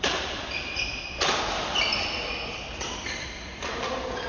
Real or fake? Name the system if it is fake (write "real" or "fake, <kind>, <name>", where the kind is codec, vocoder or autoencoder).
real